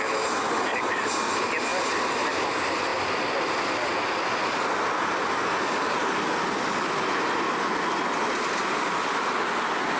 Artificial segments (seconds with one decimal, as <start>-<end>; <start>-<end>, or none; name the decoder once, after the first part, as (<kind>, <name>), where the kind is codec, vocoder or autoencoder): none